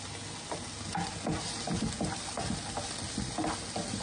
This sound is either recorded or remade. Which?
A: recorded